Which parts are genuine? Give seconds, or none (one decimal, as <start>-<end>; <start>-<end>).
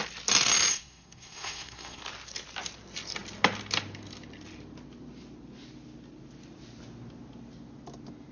0.0-0.7; 2.0-8.3